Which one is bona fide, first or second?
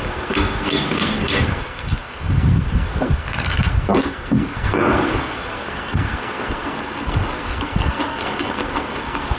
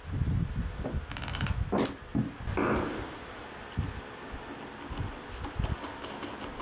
second